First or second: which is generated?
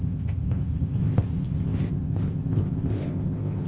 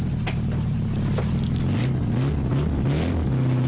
first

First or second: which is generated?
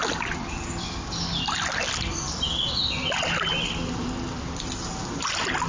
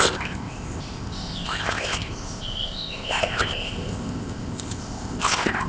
second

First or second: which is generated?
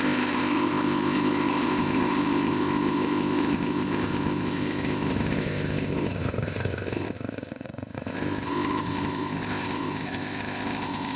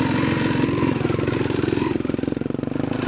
first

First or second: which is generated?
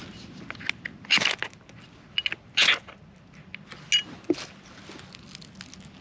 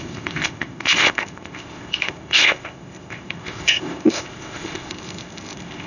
second